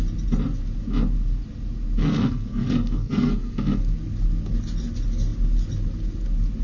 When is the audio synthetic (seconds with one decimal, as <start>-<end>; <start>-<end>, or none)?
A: 2.0-3.8